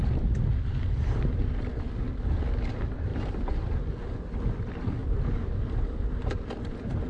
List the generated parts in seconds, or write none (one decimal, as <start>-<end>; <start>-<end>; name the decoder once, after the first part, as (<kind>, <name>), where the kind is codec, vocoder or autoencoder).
3.1-3.8 (vocoder, BigVGAN v2); 5.0-7.1